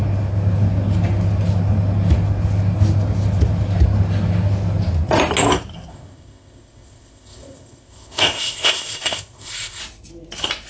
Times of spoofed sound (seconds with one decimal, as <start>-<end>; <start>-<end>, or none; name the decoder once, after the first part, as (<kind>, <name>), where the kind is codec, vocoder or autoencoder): 5.9-9.8 (codec, ZipCodec)